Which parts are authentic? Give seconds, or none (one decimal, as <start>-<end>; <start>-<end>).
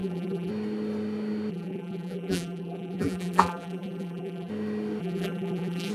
0.5-1.5; 4.5-5.0